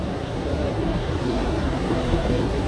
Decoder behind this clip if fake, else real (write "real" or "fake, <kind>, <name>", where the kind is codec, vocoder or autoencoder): fake, codec, SNAC